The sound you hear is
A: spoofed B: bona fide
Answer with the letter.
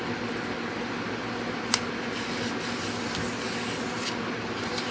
B